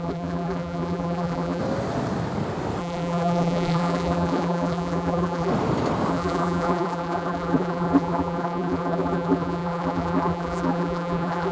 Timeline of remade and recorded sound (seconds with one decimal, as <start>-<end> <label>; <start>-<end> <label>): 0.0-1.6 remade; 1.6-2.8 recorded; 2.8-5.5 remade; 5.5-6.1 recorded; 6.1-11.5 remade